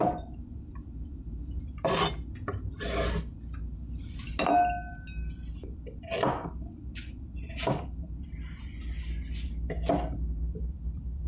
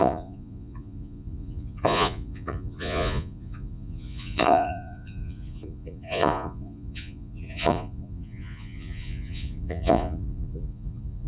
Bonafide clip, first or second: first